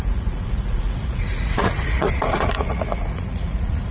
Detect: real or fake fake